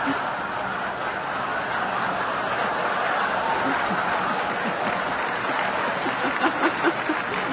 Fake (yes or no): no